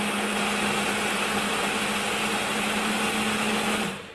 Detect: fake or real real